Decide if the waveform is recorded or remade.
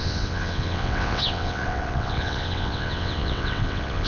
remade